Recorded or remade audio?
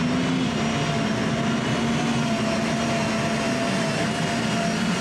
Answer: recorded